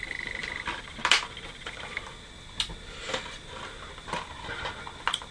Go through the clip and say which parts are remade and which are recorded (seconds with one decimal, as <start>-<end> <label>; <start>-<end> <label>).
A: 0.0-5.3 recorded